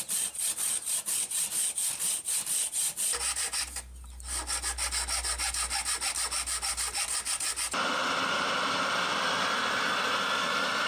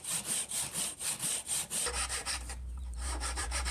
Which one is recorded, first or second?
first